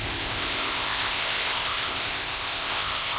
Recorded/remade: remade